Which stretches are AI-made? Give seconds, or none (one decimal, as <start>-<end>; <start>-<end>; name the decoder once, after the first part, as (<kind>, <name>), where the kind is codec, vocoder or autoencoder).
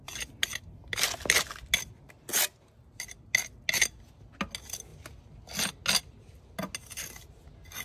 none